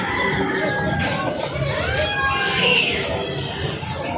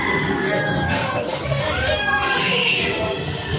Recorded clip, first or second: first